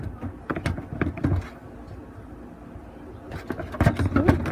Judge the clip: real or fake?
real